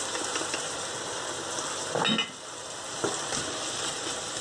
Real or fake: real